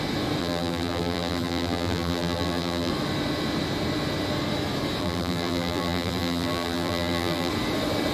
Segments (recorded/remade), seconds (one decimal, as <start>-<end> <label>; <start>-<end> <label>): 0.0-0.4 recorded; 0.4-2.9 remade; 2.9-5.0 recorded; 5.0-7.5 remade; 7.5-8.1 recorded